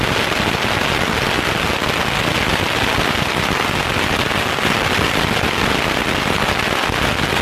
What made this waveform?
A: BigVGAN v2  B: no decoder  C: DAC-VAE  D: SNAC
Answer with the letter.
B